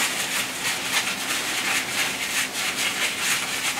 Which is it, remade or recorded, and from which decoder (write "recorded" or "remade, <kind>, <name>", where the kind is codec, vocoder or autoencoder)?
recorded